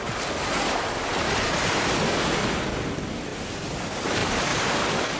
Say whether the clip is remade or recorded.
recorded